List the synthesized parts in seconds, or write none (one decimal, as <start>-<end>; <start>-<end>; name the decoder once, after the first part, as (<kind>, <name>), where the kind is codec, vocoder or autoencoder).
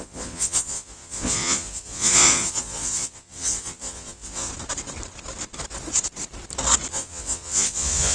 0.0-4.5 (vocoder, Vocos); 6.9-8.1